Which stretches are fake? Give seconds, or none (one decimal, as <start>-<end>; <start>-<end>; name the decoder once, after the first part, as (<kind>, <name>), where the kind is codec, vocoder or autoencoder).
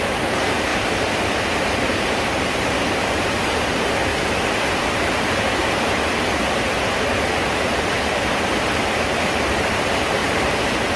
0.0-0.7 (vocoder, BigVGAN v2); 1.4-4.1; 4.8-5.6; 8.5-11.0